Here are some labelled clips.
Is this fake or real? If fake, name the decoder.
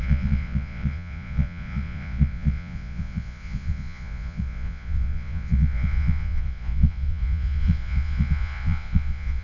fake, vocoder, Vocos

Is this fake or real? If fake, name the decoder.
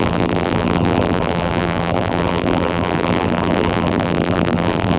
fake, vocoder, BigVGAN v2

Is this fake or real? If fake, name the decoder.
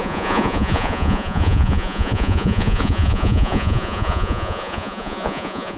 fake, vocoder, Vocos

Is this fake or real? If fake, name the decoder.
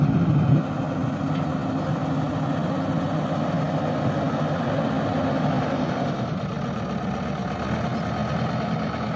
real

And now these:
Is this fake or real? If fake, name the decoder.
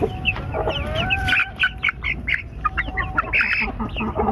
real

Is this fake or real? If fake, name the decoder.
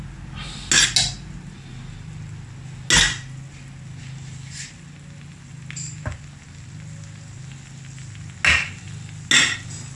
real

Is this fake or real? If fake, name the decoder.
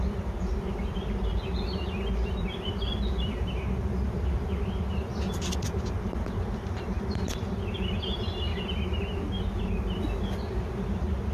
real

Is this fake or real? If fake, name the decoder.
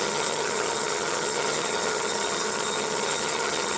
fake, vocoder, HiFi-GAN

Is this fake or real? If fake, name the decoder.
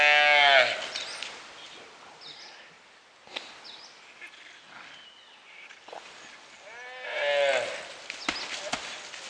real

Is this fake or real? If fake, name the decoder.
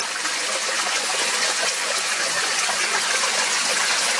fake, vocoder, Vocos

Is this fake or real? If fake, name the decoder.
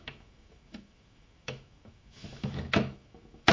fake, autoencoder, DAC-VAE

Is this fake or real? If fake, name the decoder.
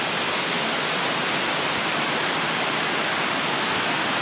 real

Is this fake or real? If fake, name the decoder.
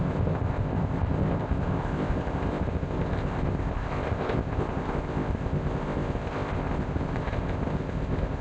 fake, codec, ZipCodec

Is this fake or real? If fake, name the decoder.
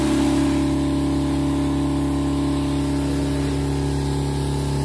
real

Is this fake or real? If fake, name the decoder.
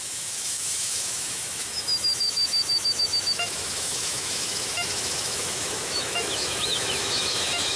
fake, autoencoder, DAC-VAE